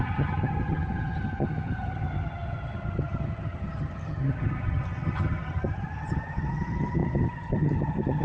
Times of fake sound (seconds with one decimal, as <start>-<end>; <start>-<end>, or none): 0.0-8.2